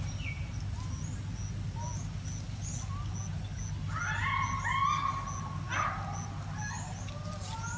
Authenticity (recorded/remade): recorded